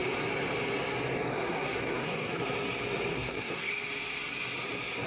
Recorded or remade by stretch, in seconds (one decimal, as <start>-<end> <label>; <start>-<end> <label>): 0.0-1.3 recorded; 1.3-2.4 remade; 2.4-3.1 recorded; 3.1-3.7 remade; 3.7-5.1 recorded